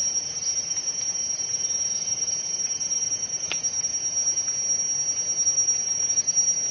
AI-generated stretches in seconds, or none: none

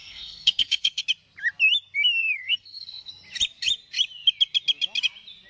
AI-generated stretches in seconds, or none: 0.0-1.0 (codec, SNAC); 2.2-3.1

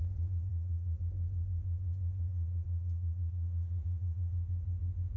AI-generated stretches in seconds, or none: 0.5-1.0 (vocoder, Vocos); 2.3-4.3